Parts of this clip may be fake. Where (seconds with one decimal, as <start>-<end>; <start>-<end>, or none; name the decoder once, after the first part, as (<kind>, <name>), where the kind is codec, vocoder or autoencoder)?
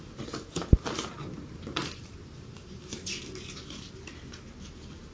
1.1-3.1 (vocoder, BigVGAN v2)